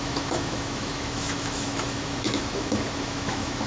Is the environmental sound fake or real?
fake